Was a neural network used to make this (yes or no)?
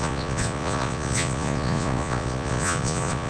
yes